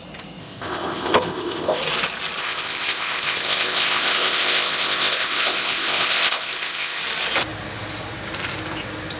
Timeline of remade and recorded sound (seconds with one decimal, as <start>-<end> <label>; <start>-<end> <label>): 0.0-0.4 recorded; 0.4-1.8 remade; 1.8-2.4 recorded; 2.4-7.0 remade; 7.0-9.2 recorded

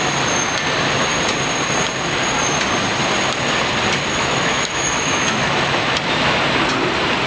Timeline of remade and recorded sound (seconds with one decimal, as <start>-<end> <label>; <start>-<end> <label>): 0.0-4.1 recorded; 4.1-5.9 remade; 5.9-7.3 recorded

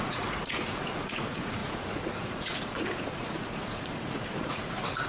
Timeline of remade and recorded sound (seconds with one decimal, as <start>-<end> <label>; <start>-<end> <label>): 0.0-5.1 remade

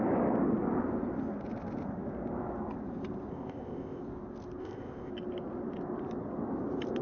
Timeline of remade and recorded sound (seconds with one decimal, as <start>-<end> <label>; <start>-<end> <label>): 0.0-3.3 recorded; 3.3-4.0 remade; 4.0-4.6 recorded; 4.6-5.1 remade; 5.1-7.0 recorded